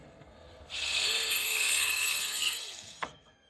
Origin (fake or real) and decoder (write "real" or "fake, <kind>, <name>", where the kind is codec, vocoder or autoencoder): fake, codec, SNAC